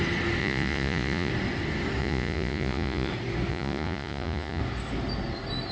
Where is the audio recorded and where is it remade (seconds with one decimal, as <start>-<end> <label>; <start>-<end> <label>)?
0.0-0.4 recorded; 0.4-1.3 remade; 1.3-2.0 recorded; 2.0-3.1 remade; 3.1-3.5 recorded; 3.5-4.6 remade; 4.6-5.7 recorded